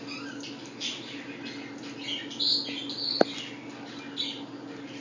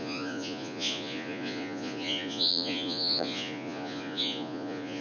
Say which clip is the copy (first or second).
second